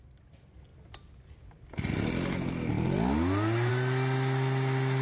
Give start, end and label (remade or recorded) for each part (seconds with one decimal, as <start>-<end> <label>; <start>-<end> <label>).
0.0-5.0 recorded